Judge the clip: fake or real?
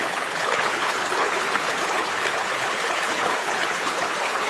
fake